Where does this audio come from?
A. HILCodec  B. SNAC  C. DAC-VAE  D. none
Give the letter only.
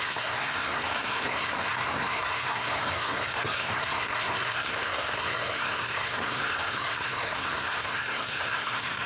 B